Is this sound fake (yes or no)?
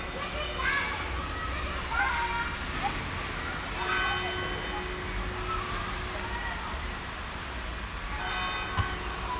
no